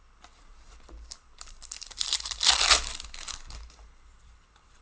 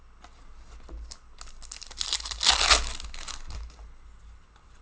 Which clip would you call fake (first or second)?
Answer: first